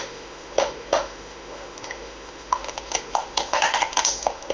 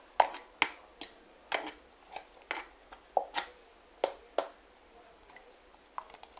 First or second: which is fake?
first